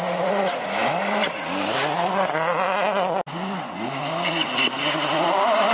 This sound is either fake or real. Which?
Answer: real